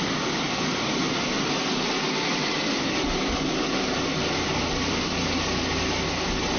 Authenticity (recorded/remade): recorded